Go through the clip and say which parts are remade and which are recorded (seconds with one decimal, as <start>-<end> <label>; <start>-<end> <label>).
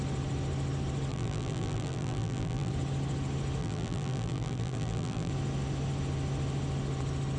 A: 0.0-1.1 recorded; 1.1-2.7 remade; 2.7-3.6 recorded; 3.6-5.3 remade; 5.3-7.4 recorded